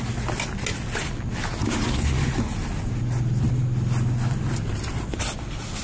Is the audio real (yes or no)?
yes